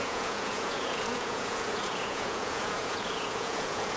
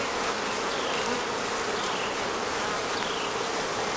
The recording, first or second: second